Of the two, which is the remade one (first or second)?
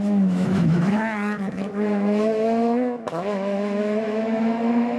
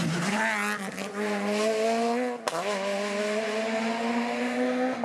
first